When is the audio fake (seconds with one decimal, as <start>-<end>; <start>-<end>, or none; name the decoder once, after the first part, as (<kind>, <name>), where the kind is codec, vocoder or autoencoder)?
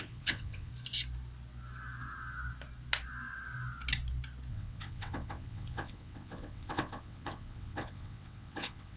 0.0-0.7 (vocoder, WaveNeXt); 4.5-9.0